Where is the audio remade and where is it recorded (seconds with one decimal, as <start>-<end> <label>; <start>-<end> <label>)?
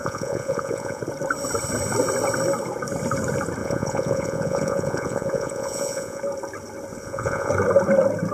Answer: 0.0-1.0 remade; 1.0-3.6 recorded; 3.6-6.2 remade; 6.2-7.0 recorded; 7.0-7.5 remade; 7.5-8.3 recorded